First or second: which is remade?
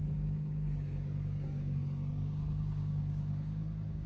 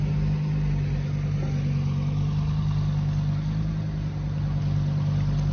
first